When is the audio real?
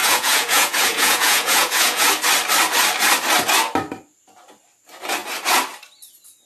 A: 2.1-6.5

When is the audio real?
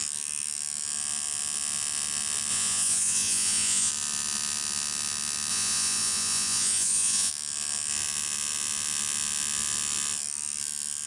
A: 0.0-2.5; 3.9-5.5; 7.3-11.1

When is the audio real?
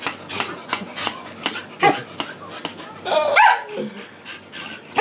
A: 0.0-0.6; 1.3-5.0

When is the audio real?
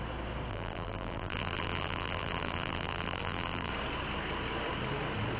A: 0.0-0.5; 3.7-5.4